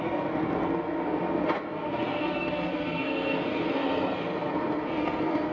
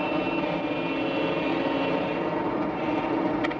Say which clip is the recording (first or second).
second